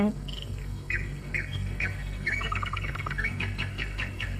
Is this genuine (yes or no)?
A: no